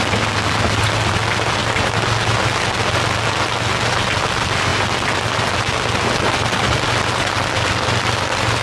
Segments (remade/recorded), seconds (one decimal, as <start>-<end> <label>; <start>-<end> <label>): 0.0-8.6 recorded